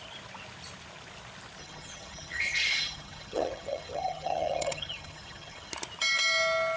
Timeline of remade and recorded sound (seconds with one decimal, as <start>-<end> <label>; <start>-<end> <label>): 0.0-1.6 recorded; 1.6-5.7 remade; 5.7-6.8 recorded

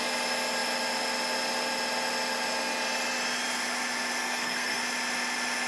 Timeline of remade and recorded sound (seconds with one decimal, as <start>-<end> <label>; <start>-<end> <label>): 0.0-4.2 recorded; 4.2-4.8 remade; 4.8-5.7 recorded